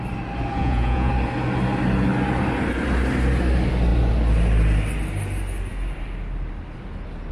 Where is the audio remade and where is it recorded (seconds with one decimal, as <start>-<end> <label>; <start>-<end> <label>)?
0.0-0.6 recorded; 0.6-1.1 remade; 1.1-7.3 recorded